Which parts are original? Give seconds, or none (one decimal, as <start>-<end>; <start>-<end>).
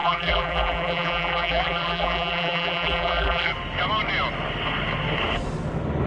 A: 3.5-6.1